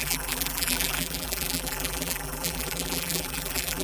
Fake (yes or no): yes